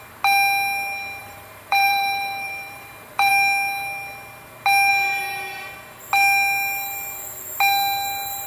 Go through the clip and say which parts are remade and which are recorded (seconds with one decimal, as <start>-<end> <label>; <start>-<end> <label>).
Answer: 0.0-1.2 recorded; 1.2-3.3 remade; 3.3-8.5 recorded